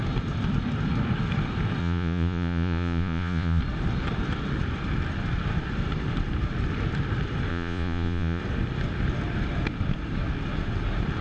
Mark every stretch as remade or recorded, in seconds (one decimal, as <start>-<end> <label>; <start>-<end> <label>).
0.0-1.8 recorded; 1.8-3.6 remade; 3.6-7.5 recorded; 7.5-8.4 remade; 8.4-11.2 recorded